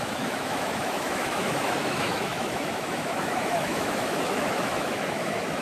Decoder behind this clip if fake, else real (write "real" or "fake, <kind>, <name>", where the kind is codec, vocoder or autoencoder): fake, autoencoder, DAC-VAE